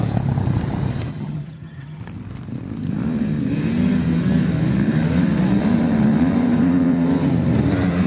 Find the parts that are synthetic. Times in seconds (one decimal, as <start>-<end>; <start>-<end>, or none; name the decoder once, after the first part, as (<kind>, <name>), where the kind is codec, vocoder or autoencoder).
1.1-2.0 (vocoder, HiFi-GAN)